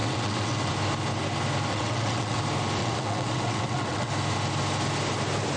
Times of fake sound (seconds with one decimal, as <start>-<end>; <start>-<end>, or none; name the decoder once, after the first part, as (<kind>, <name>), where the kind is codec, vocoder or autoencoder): 0.0-0.7 (vocoder, WaveNeXt); 1.7-2.4; 2.8-4.1